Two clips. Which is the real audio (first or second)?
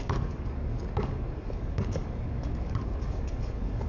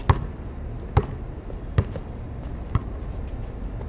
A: second